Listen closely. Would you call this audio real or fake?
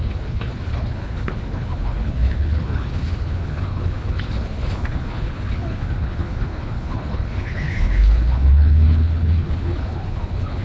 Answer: fake